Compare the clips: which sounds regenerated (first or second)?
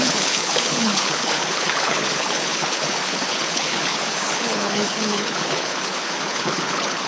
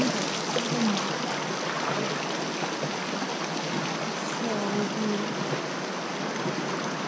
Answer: first